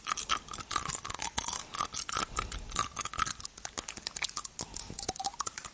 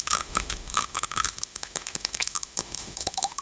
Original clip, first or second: first